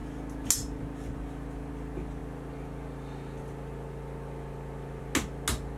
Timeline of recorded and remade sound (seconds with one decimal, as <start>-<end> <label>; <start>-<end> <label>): 0.0-5.8 recorded